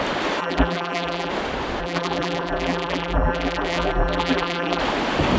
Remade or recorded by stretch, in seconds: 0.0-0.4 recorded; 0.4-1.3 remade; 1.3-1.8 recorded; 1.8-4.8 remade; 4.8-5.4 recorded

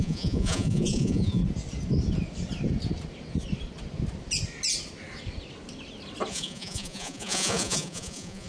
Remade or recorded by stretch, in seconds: 0.0-1.4 remade; 1.4-6.3 recorded; 6.3-8.5 remade